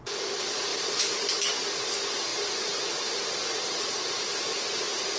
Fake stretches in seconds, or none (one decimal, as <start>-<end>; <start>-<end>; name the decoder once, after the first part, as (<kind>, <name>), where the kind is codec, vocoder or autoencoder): none

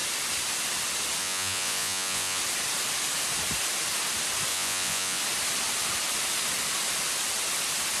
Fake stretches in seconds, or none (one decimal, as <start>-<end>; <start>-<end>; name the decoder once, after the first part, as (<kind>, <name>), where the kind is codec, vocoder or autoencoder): 1.2-2.4 (vocoder, Vocos); 4.5-5.2

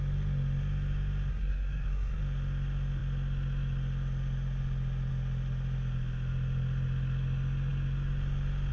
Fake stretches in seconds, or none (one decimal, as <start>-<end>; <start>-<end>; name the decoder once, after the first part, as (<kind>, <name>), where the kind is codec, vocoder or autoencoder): 1.3-2.2 (codec, SNAC)

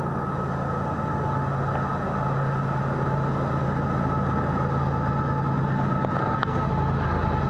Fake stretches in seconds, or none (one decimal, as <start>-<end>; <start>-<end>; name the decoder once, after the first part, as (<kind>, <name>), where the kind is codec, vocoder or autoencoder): 6.2-6.7 (codec, SNAC)

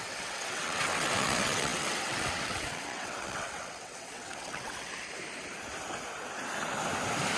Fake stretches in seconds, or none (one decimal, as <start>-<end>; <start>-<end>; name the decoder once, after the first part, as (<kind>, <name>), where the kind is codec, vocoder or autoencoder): 0.0-4.9 (vocoder, WaveNeXt)

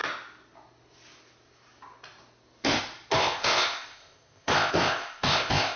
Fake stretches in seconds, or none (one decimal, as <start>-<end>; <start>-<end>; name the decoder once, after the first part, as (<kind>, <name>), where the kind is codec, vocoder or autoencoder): 3.2-5.8 (codec, ZipCodec)

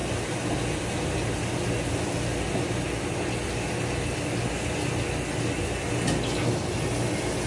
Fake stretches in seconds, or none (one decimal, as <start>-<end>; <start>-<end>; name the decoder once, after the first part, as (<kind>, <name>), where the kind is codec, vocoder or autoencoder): none

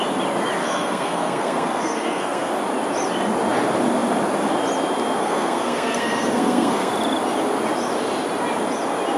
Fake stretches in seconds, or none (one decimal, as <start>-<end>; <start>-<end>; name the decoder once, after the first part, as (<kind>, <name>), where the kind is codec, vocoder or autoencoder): 0.6-2.5 (codec, SNAC); 5.2-6.9